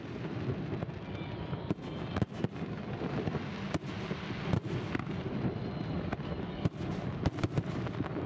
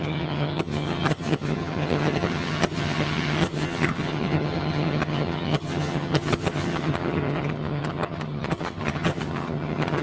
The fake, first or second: second